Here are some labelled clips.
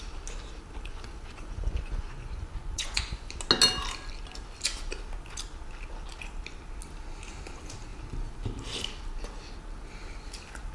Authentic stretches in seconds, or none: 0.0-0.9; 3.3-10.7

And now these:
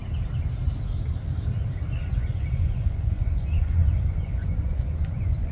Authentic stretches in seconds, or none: 0.0-2.2

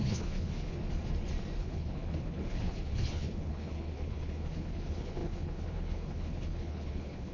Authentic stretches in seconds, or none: 0.8-1.6

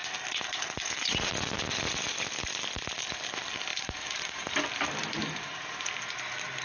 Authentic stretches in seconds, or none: 0.0-3.7; 4.5-5.2; 5.9-6.6

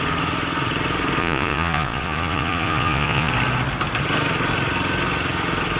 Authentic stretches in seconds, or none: 0.0-1.2; 3.3-5.8